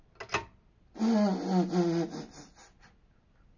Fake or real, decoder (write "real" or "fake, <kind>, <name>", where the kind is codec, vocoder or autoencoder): real